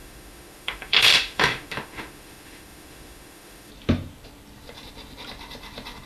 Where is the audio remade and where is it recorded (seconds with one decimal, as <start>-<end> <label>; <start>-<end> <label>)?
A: 0.0-3.7 remade; 3.7-6.1 recorded